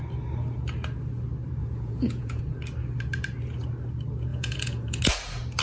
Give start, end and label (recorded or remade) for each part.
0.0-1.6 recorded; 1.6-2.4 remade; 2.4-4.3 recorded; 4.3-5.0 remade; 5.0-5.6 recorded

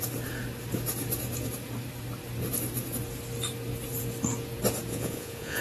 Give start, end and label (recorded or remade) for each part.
0.0-4.9 recorded; 4.9-5.6 remade

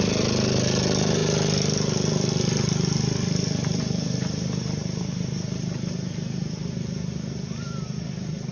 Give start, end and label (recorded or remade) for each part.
0.0-8.5 recorded